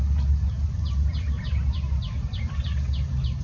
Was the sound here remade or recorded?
recorded